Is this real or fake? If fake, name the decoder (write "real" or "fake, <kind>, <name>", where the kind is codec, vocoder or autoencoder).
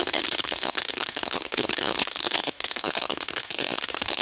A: fake, codec, SNAC